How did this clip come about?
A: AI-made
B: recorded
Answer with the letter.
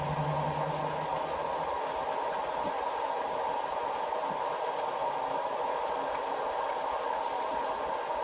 B